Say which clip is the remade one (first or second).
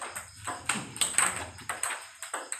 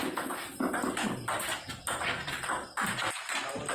first